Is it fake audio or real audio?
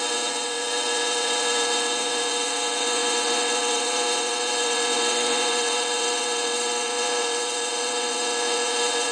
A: fake